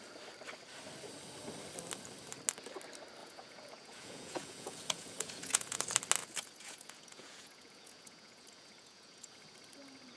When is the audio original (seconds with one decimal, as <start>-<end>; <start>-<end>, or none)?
0.0-3.2; 5.8-6.2; 9.3-10.2